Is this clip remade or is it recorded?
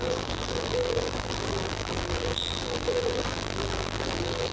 remade